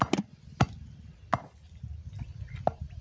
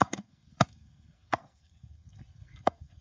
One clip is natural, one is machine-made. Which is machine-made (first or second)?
second